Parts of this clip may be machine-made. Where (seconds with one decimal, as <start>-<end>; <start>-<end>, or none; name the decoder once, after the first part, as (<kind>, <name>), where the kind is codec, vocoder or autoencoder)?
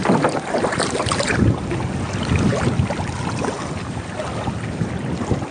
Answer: none